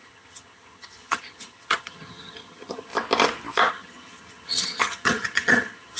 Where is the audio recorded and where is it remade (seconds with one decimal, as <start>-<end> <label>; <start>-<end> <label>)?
0.0-2.9 remade; 2.9-3.7 recorded; 3.7-6.0 remade